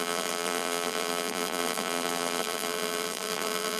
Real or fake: fake